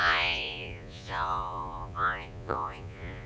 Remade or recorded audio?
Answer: remade